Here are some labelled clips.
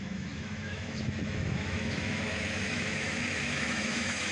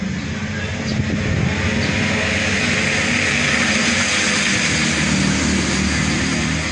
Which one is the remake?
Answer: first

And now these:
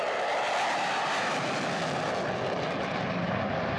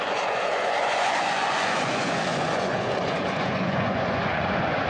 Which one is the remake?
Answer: second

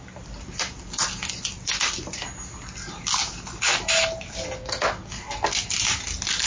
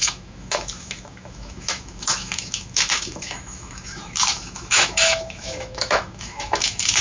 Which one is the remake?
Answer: second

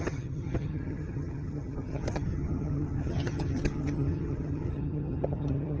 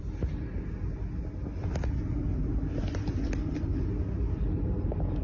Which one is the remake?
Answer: first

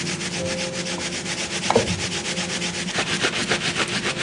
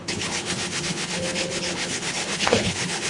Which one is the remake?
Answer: second